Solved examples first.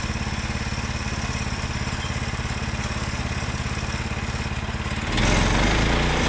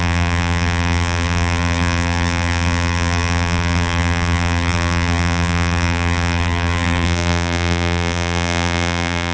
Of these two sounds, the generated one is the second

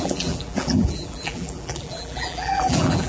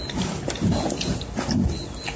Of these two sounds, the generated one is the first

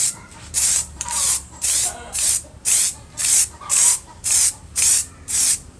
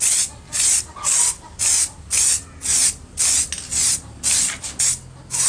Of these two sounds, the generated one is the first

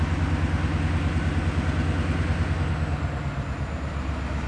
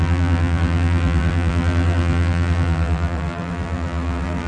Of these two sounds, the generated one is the second